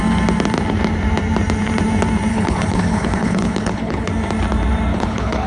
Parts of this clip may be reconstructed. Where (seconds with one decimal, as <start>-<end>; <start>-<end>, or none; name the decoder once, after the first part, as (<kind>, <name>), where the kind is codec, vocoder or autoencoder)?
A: 2.3-4.1 (codec, HILCodec); 4.9-5.5